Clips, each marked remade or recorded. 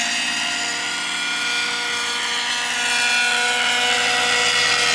recorded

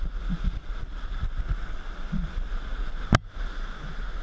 recorded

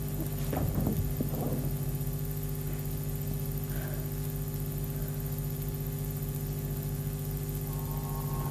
recorded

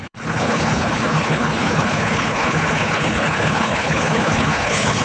remade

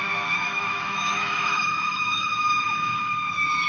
remade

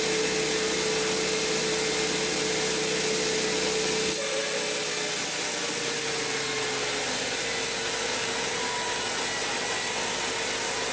recorded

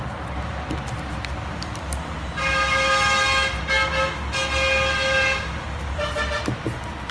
recorded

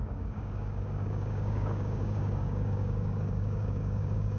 remade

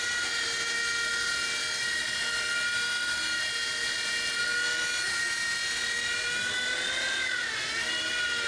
recorded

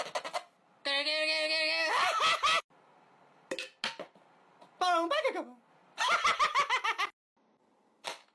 recorded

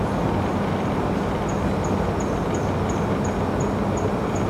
recorded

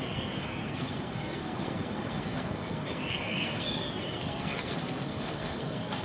remade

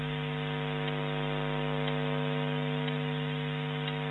recorded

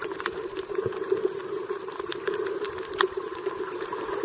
remade